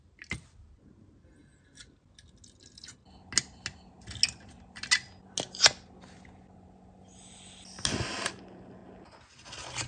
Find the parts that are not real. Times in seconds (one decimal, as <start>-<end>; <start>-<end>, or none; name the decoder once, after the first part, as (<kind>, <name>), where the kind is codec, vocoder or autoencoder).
none